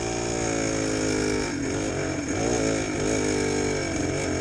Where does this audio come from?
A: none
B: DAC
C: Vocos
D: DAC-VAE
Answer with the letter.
A